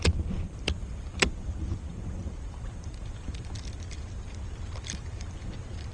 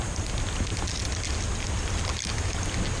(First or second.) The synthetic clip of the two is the first